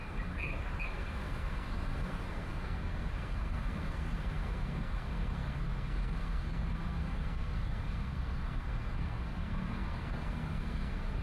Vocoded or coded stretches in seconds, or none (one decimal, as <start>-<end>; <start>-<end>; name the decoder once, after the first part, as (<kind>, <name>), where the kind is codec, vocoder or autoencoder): 0.0-11.2 (codec, SNAC)